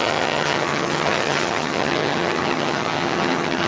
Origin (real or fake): fake